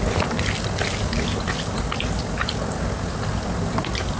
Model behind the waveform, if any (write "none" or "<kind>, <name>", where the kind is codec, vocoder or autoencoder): none